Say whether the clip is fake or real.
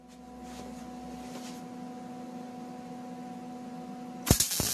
real